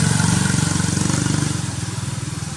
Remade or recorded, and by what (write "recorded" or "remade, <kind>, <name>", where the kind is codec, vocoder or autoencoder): recorded